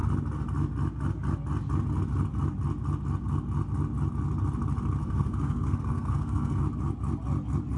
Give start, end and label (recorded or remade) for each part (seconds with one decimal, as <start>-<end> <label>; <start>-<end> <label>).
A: 0.0-5.0 recorded; 5.0-6.6 remade; 6.6-7.8 recorded